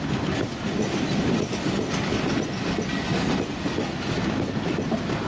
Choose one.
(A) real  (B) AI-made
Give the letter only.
A